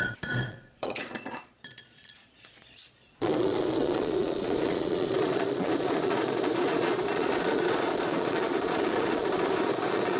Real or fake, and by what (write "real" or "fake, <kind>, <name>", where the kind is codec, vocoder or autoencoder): fake, vocoder, Vocos